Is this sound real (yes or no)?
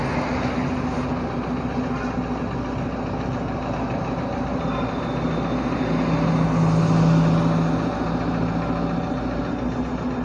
yes